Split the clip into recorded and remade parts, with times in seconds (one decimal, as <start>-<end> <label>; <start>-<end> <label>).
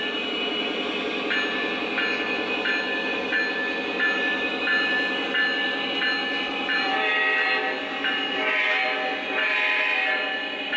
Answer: 0.0-10.8 recorded